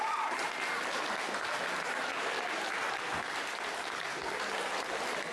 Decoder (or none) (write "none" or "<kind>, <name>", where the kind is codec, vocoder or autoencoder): none